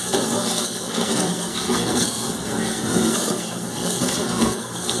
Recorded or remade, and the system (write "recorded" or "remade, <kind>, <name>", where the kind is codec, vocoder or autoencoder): remade, codec, SNAC